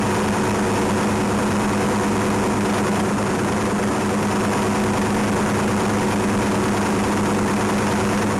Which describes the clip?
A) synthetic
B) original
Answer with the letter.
B